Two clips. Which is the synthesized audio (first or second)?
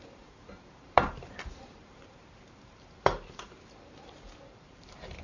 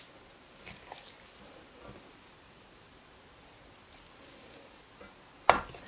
first